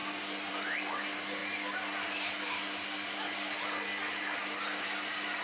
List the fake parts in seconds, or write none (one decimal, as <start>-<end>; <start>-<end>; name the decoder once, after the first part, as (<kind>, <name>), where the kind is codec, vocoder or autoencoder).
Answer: none